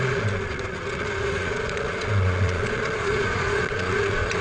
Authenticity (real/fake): fake